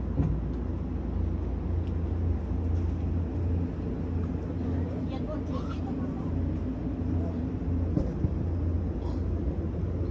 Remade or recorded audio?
recorded